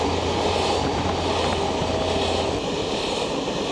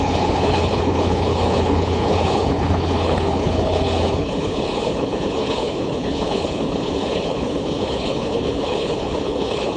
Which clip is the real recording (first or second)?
first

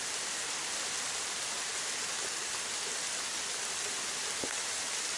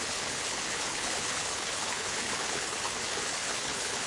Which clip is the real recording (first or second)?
first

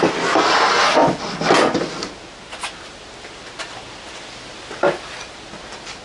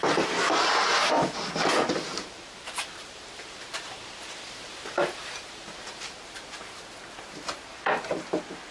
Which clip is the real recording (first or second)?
first